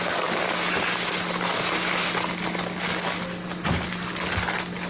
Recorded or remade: recorded